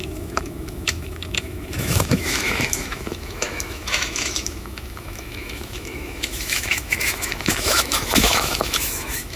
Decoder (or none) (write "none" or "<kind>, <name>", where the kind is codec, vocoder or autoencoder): autoencoder, DAC-VAE